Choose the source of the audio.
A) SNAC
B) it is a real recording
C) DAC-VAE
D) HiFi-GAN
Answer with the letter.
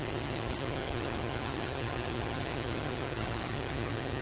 D